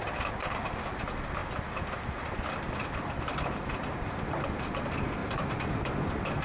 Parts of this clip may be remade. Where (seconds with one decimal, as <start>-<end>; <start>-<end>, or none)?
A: 5.2-6.4